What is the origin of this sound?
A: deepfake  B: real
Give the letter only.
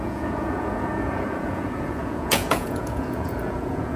A